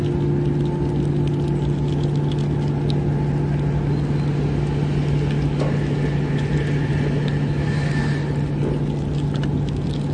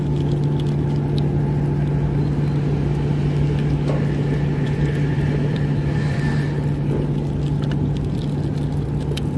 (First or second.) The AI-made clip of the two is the second